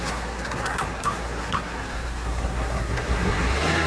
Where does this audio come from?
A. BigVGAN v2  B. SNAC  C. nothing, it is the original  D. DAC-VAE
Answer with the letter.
B